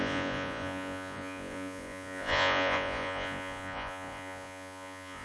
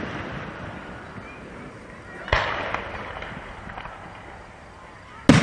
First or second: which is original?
second